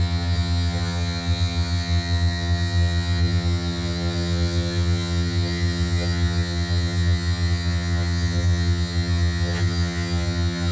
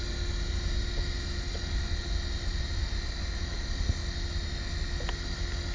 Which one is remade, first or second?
first